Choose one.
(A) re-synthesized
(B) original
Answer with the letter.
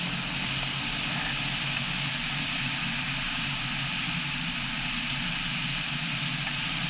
B